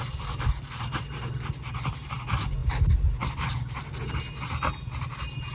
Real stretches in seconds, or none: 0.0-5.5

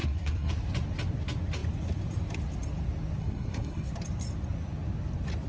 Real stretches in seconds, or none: 0.5-3.2; 3.9-5.5